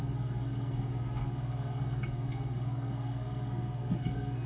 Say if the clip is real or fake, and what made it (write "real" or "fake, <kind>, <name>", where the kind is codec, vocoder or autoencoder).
fake, codec, SNAC